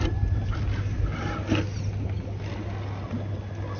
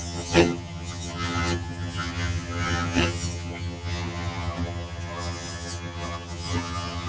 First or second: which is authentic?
first